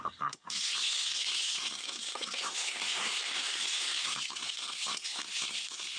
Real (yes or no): no